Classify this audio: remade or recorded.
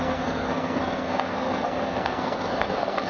remade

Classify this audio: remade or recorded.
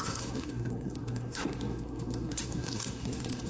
remade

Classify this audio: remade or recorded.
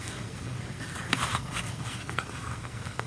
remade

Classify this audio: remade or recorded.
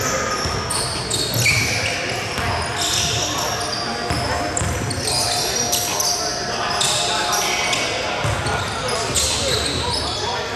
recorded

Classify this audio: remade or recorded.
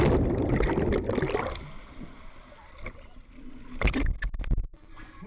recorded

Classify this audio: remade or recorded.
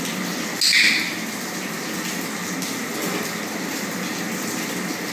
recorded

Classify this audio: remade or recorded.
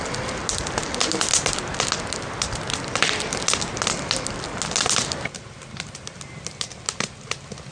recorded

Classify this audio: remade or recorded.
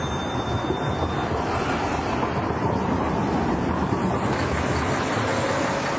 recorded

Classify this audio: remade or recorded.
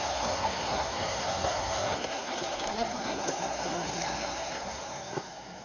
remade